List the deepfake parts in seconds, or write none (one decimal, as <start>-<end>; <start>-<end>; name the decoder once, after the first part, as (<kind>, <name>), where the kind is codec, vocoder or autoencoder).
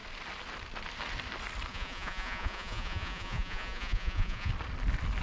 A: 1.7-4.5 (vocoder, Vocos)